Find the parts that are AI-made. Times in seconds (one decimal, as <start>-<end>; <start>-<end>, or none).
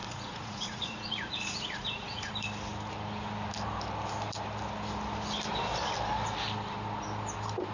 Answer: 0.0-2.3